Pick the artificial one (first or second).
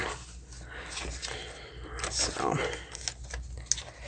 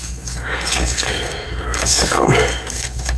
second